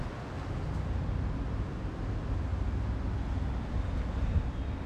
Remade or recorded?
recorded